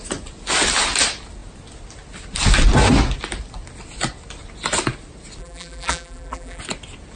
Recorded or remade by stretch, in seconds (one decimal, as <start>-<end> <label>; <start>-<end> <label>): 0.0-5.4 recorded; 5.4-6.6 remade; 6.6-7.2 recorded